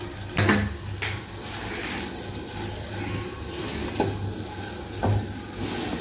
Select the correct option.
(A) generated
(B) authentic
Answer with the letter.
B